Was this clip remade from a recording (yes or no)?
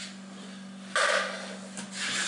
no